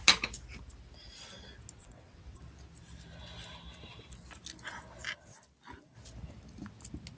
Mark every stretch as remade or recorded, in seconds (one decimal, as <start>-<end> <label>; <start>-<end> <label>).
0.0-1.8 recorded; 1.8-2.4 remade; 2.4-7.2 recorded